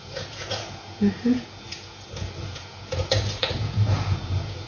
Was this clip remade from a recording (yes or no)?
yes